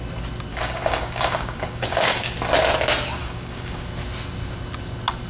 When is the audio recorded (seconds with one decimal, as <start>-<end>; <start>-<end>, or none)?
0.0-0.5; 2.3-3.2; 3.8-5.3

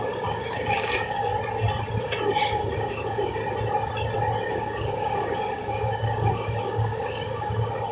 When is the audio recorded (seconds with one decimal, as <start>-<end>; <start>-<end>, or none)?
1.3-2.0; 3.4-4.5

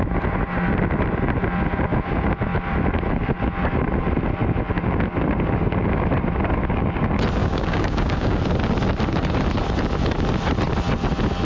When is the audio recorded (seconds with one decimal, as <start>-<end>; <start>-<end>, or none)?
0.0-7.4; 8.4-11.4

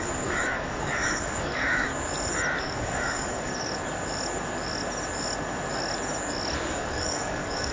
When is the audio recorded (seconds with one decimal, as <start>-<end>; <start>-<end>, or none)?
1.9-2.6; 3.5-6.7

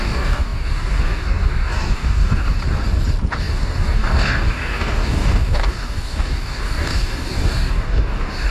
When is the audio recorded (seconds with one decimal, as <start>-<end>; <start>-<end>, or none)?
2.6-3.4